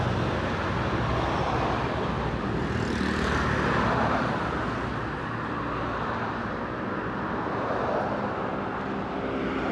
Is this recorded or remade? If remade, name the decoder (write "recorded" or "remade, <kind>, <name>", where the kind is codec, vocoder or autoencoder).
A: recorded